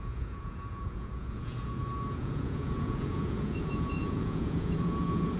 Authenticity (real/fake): fake